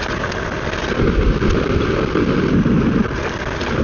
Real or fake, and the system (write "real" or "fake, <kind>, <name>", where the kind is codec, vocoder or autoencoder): real